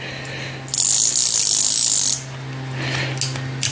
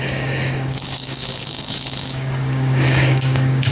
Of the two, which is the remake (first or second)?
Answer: second